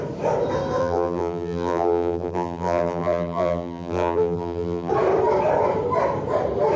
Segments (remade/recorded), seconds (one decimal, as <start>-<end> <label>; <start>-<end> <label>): 0.0-0.8 recorded; 0.8-4.9 remade; 4.9-6.8 recorded